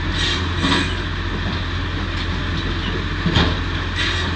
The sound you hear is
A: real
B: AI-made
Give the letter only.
A